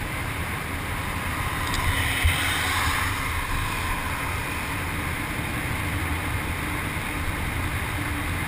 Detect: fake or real real